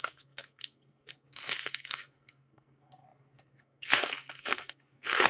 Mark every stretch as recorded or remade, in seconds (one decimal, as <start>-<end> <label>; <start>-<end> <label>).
0.0-5.3 remade